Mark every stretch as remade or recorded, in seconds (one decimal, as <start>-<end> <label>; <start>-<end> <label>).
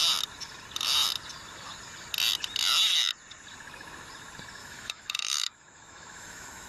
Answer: 0.0-4.6 recorded; 4.6-6.7 remade